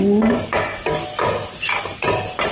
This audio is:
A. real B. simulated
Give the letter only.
A